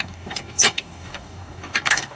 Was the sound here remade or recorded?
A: remade